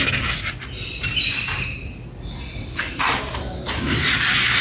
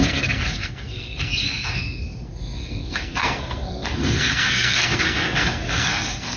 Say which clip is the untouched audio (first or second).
first